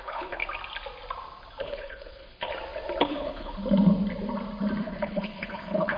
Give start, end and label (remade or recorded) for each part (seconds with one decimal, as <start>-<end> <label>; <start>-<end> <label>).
0.0-0.4 remade; 0.4-1.6 recorded; 1.6-2.5 remade; 2.5-3.0 recorded; 3.0-3.6 remade; 3.6-4.8 recorded; 4.8-6.0 remade